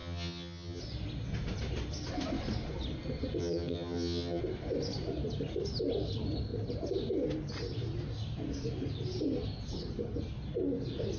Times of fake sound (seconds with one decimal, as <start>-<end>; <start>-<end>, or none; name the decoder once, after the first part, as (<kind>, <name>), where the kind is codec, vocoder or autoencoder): 0.0-0.8 (vocoder, HiFi-GAN); 3.4-4.4